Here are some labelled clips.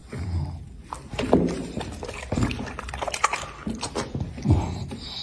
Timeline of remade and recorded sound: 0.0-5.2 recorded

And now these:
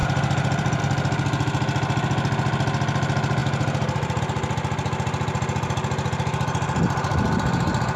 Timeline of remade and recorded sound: 0.0-0.8 remade; 0.8-3.4 recorded; 3.4-4.2 remade; 4.2-8.0 recorded

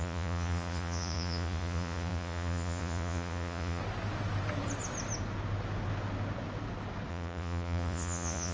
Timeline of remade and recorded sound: 0.0-3.8 remade; 3.8-7.1 recorded; 7.1-8.5 remade

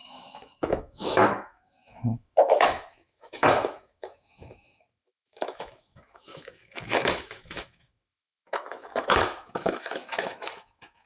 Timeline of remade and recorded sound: 0.0-11.1 remade

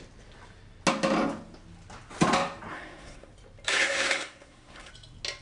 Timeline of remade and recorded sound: 0.0-2.7 recorded; 2.7-3.3 remade; 3.3-3.7 recorded; 3.7-4.9 remade; 4.9-5.4 recorded

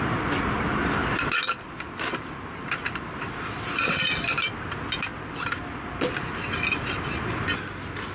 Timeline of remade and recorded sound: 0.0-8.1 recorded

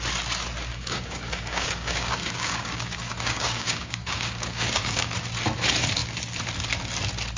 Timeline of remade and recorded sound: 0.0-0.7 recorded; 0.7-5.1 remade; 5.1-7.4 recorded

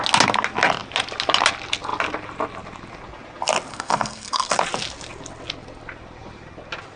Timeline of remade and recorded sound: 0.0-3.7 recorded; 3.7-4.5 remade; 4.5-7.0 recorded